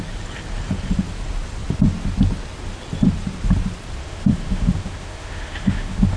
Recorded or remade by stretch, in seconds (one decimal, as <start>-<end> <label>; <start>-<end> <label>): 0.0-4.0 recorded; 4.0-6.2 remade